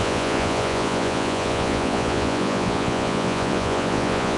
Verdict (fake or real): fake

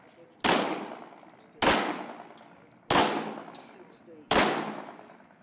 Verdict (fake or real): real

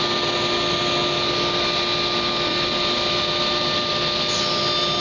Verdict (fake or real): real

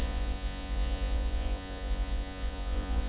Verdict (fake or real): fake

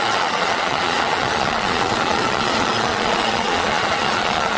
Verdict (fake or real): fake